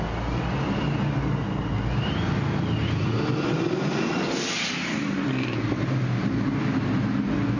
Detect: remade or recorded recorded